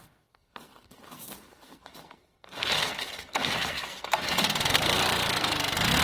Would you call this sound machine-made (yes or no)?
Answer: yes